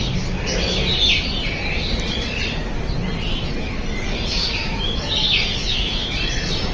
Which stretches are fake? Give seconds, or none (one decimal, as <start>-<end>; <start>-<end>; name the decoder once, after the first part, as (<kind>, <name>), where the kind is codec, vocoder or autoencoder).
4.4-5.0 (autoencoder, DAC-VAE); 5.6-6.1